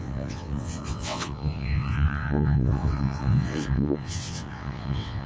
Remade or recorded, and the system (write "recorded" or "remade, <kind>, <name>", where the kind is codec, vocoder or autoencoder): remade, vocoder, WaveNeXt